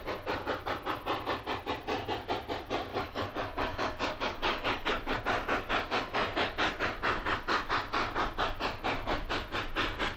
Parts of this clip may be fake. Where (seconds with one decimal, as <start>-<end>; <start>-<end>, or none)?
2.9-5.2

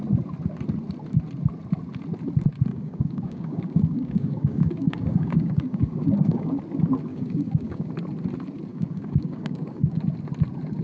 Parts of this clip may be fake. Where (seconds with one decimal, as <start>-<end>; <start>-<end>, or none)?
2.7-6.6; 7.1-7.9; 8.7-10.0

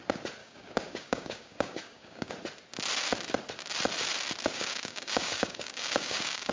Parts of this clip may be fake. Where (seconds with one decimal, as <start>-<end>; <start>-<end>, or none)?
0.4-2.3; 4.5-6.5

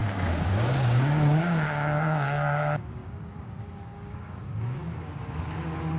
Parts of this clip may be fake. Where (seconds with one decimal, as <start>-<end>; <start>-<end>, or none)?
0.0-6.0

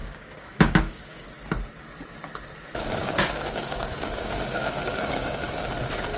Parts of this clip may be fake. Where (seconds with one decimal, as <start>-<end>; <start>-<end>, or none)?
0.0-1.3; 3.0-5.5

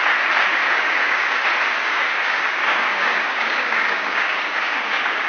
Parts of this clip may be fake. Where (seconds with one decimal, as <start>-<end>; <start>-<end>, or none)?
0.6-1.4; 1.8-5.3